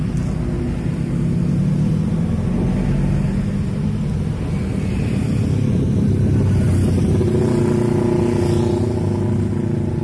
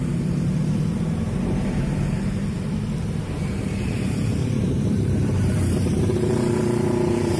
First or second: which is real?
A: first